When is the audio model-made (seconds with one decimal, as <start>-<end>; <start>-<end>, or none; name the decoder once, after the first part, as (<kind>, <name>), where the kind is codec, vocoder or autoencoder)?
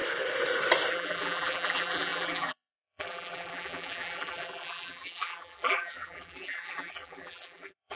0.9-8.0 (vocoder, BigVGAN v2)